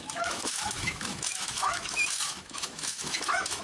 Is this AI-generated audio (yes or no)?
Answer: yes